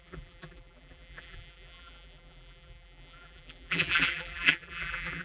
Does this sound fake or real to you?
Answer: fake